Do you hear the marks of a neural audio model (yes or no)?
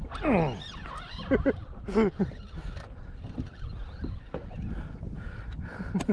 no